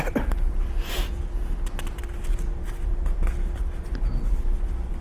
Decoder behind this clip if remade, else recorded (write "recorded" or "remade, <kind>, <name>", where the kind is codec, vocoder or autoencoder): recorded